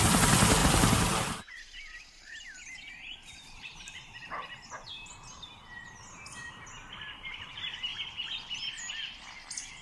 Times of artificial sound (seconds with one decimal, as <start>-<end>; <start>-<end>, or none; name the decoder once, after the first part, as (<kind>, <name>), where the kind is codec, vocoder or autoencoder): 0.6-5.1 (vocoder, BigVGAN v2)